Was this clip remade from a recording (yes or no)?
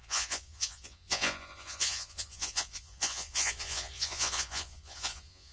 yes